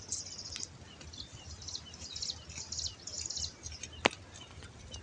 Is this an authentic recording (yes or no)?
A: yes